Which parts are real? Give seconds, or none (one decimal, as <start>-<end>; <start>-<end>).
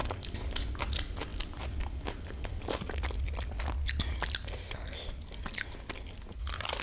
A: 0.0-6.8